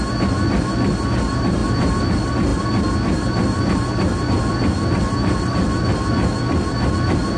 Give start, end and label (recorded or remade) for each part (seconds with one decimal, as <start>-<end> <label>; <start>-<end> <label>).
0.0-7.4 recorded